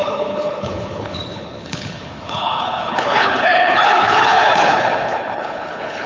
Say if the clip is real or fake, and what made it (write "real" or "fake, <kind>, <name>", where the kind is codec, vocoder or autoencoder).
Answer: fake, codec, HILCodec